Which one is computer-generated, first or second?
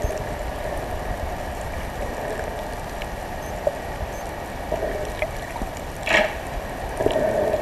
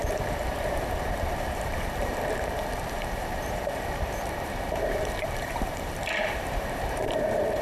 second